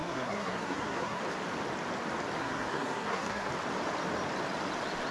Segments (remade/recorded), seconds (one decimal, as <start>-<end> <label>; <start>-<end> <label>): 0.0-1.2 remade; 1.2-2.4 recorded; 2.4-3.5 remade; 3.5-5.1 recorded